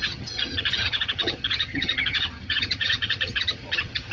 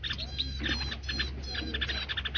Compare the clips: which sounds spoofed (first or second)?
first